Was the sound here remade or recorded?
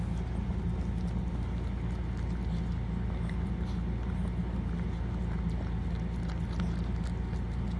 recorded